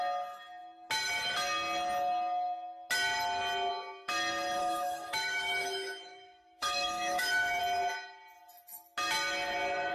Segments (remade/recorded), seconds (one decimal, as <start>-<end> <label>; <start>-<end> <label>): 0.0-4.6 recorded; 4.6-7.6 remade; 7.6-9.9 recorded